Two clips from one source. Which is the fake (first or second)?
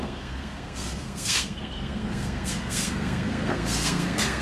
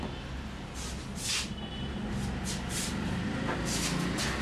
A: first